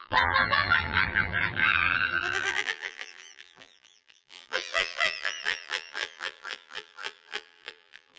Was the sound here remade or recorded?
remade